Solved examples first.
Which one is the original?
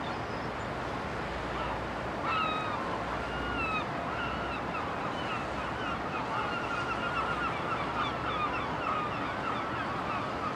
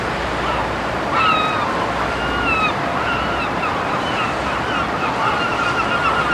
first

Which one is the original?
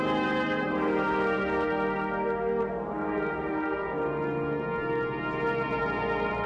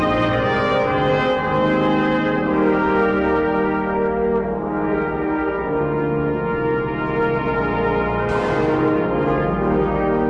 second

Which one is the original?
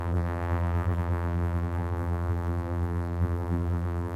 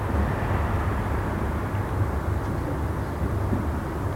second